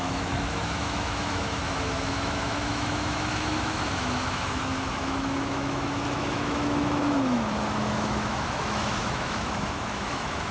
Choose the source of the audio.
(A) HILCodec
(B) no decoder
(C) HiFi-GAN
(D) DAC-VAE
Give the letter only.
D